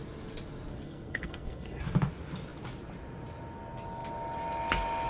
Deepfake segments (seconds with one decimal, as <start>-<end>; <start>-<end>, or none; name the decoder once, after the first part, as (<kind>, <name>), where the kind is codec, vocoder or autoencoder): 0.7-1.8 (codec, SNAC)